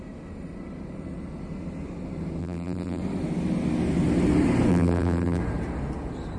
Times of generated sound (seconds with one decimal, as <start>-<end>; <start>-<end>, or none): 2.4-3.0; 4.7-5.4